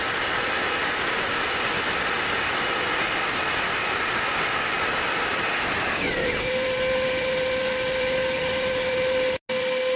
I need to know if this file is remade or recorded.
recorded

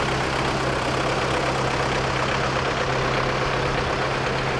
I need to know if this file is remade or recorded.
recorded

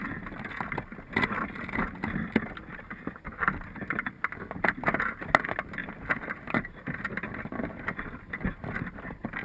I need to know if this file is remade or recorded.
recorded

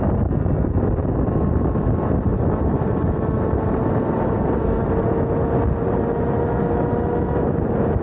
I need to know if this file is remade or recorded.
recorded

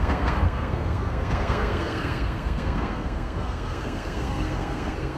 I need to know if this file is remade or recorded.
remade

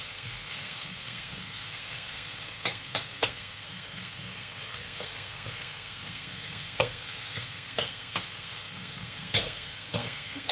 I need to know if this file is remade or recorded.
remade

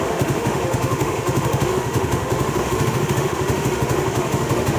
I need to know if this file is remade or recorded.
remade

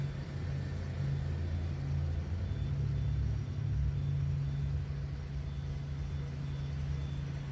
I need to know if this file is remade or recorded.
recorded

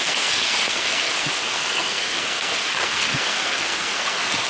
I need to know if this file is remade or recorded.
remade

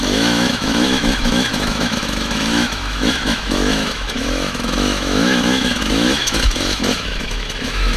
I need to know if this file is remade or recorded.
remade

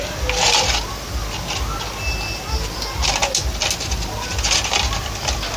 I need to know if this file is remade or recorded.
recorded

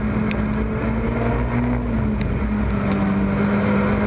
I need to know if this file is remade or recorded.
recorded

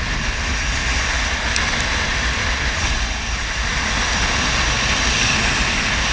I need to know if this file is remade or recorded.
recorded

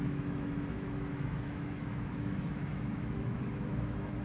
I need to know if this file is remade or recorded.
remade